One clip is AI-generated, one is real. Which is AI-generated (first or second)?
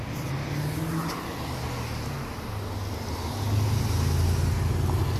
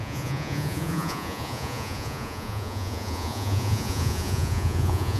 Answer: second